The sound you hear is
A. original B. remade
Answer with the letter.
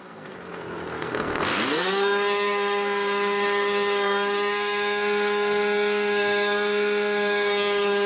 B